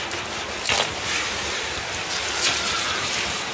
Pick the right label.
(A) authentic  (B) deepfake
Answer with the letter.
A